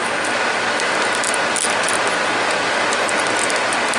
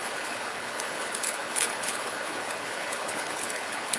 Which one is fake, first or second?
second